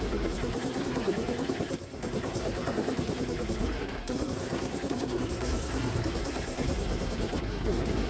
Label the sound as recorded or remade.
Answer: remade